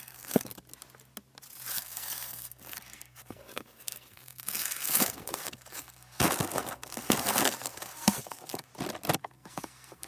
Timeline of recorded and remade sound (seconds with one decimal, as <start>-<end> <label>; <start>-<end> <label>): 0.0-0.5 remade; 0.5-1.7 recorded; 1.7-8.7 remade; 8.7-9.2 recorded; 9.2-10.1 remade